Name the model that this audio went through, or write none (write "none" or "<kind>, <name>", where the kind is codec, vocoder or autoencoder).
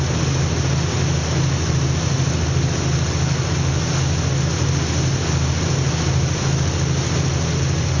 none